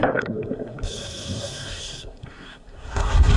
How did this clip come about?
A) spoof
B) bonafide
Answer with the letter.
A